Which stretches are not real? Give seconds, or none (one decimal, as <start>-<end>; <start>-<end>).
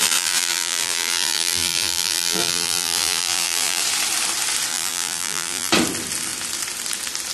0.0-3.8; 4.7-5.7